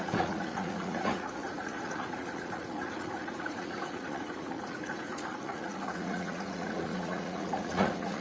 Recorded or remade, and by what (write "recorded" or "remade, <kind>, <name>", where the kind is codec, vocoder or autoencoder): remade, vocoder, Vocos